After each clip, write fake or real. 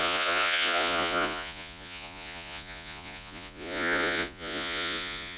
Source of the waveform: fake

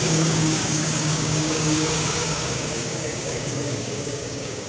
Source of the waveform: fake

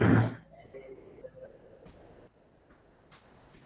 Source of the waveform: real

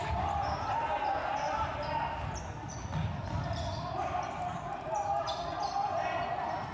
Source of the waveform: real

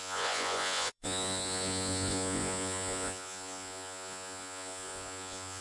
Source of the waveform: fake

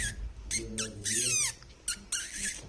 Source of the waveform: real